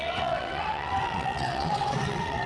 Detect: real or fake fake